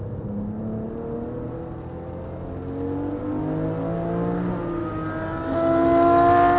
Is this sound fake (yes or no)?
no